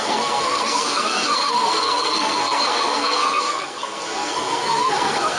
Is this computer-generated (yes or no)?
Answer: yes